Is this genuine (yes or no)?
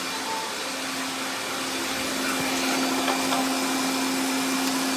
yes